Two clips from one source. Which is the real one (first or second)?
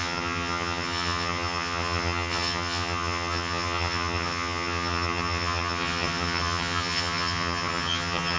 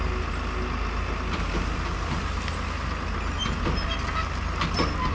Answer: second